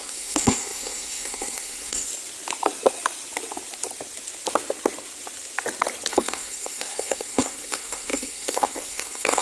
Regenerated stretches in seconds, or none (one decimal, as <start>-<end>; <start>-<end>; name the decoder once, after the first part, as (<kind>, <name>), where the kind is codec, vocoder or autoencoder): 0.0-2.1 (codec, SNAC); 6.1-9.4